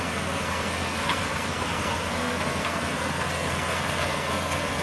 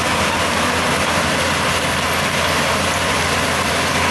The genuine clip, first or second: second